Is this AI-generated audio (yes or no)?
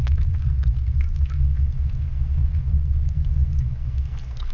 yes